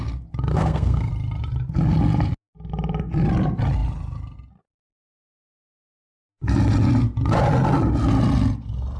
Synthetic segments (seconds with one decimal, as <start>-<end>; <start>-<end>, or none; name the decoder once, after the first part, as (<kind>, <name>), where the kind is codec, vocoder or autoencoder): 0.5-1.1 (codec, SNAC)